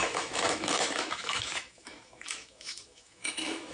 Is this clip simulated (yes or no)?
yes